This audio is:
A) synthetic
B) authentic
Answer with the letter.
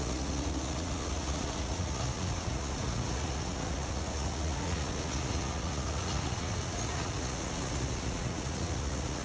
A